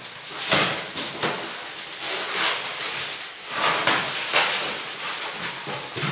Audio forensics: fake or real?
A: real